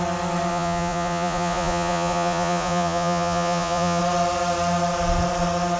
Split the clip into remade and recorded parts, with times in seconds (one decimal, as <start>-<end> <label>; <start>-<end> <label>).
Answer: 0.0-0.5 recorded; 0.5-4.0 remade; 4.0-5.8 recorded